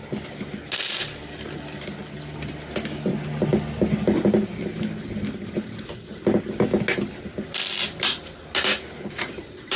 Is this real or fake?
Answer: real